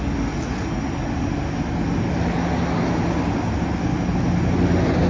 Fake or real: real